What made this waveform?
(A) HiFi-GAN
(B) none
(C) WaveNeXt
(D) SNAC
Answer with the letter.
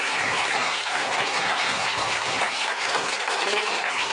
D